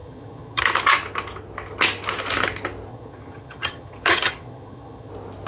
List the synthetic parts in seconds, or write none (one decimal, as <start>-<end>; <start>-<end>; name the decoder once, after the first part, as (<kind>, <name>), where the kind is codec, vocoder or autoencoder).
0.0-0.6 (vocoder, HiFi-GAN); 2.9-5.1